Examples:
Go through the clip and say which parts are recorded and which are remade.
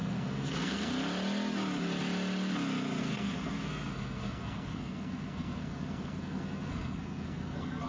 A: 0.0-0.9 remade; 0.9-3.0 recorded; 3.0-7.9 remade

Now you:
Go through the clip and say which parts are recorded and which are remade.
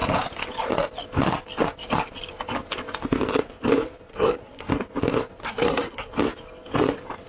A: 0.0-4.1 recorded; 4.1-4.7 remade; 4.7-5.4 recorded; 5.4-6.1 remade; 6.1-7.3 recorded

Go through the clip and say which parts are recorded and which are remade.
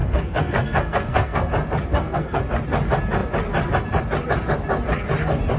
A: 0.0-1.5 remade; 1.5-1.9 recorded; 1.9-2.4 remade; 2.4-5.6 recorded